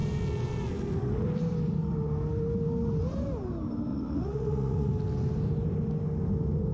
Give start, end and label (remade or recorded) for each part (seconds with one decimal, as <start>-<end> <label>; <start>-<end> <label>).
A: 0.0-3.9 recorded; 3.9-4.9 remade; 4.9-6.7 recorded